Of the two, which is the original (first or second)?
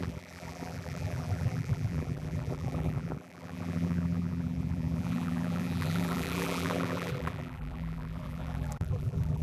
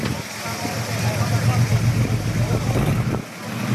second